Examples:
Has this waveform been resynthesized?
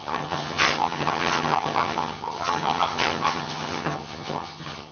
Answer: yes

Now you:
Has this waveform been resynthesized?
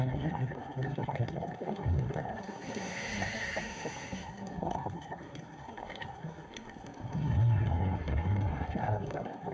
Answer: yes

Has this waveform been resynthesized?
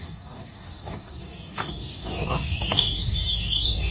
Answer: yes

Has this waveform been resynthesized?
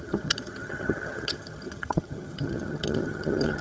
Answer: yes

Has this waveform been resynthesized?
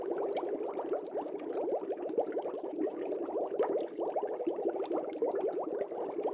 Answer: no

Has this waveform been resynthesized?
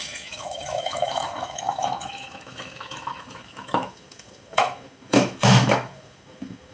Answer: yes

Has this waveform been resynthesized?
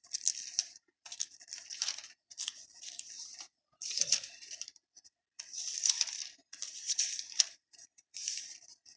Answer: yes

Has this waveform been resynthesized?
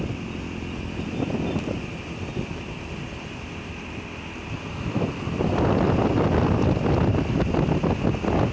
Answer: no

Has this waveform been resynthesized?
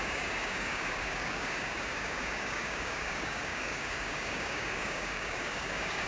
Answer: yes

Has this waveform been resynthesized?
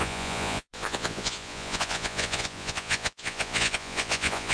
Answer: yes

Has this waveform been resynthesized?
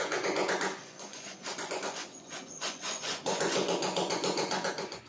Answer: yes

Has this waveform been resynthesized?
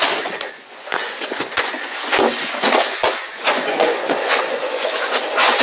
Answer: yes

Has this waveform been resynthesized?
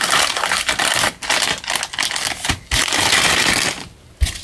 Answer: no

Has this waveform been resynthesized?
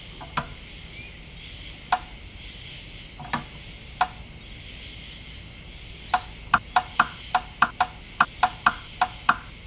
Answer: no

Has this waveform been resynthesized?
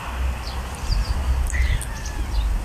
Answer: no